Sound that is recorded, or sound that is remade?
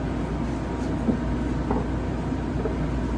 recorded